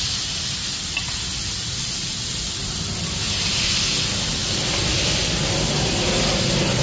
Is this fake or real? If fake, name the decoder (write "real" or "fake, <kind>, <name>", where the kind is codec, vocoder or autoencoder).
real